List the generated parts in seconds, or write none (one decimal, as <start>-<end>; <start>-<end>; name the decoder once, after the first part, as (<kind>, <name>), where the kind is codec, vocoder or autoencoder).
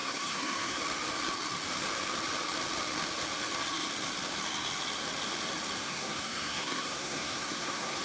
0.0-0.8 (codec, SNAC); 5.8-8.0